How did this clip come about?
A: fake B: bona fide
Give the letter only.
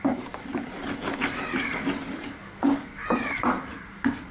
B